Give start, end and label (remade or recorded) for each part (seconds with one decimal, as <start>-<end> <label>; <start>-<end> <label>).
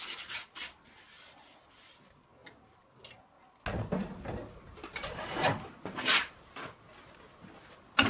0.0-8.1 recorded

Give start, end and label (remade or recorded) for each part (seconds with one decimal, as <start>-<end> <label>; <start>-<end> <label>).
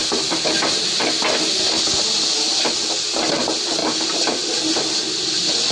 0.0-3.8 recorded; 3.8-4.5 remade; 4.5-5.7 recorded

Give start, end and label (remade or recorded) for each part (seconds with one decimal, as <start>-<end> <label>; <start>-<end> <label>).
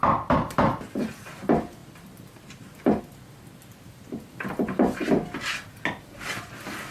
0.0-0.8 remade; 0.8-6.9 recorded